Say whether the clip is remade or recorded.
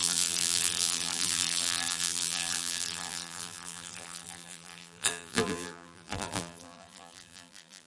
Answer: remade